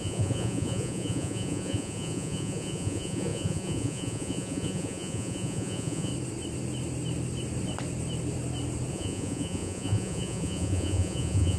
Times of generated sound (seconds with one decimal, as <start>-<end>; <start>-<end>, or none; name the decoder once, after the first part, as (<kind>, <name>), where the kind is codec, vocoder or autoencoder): 0.0-6.1 (vocoder, Vocos); 8.9-11.6